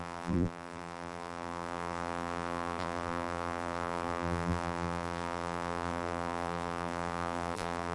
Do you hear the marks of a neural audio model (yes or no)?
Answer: yes